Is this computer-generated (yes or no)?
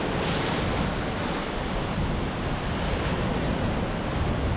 no